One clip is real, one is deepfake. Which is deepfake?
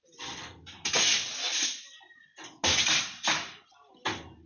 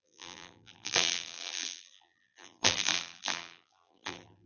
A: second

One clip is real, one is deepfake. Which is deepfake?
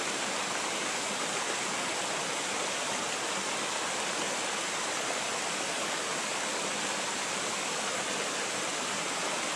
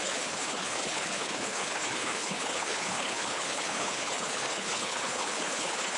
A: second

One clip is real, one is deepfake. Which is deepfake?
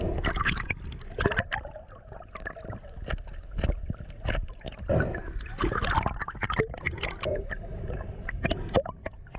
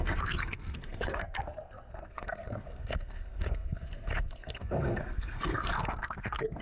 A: second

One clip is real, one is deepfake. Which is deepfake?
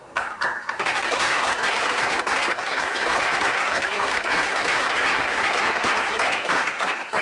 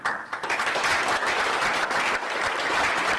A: first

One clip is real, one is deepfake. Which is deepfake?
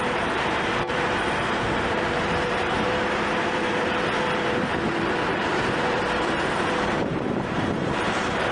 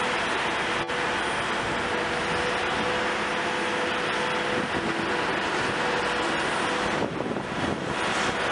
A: first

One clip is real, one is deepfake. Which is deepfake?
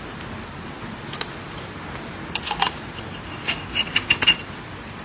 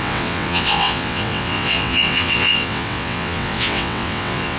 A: second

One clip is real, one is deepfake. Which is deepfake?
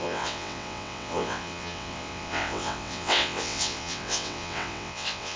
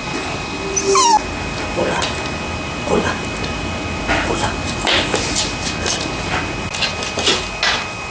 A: first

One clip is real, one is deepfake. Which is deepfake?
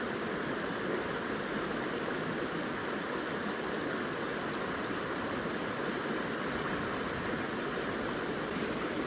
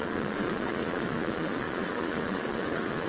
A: second